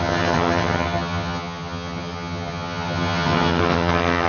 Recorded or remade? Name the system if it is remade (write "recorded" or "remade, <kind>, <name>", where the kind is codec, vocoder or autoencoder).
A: remade, vocoder, HiFi-GAN